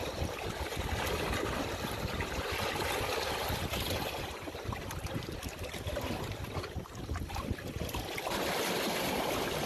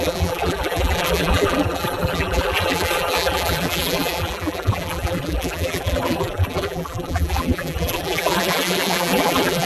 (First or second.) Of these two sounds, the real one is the first